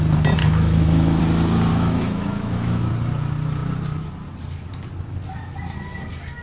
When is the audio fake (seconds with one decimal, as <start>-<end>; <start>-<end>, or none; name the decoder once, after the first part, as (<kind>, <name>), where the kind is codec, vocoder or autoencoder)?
0.4-1.2 (autoencoder, DAC-VAE); 1.7-2.9